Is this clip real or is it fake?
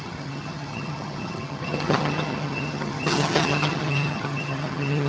fake